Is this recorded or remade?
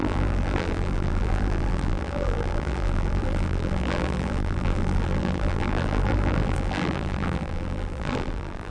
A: remade